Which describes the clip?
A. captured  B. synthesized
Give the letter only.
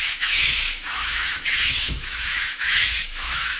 B